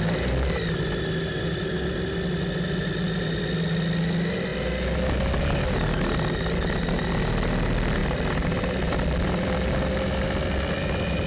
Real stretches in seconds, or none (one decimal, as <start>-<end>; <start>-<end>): 0.0-11.3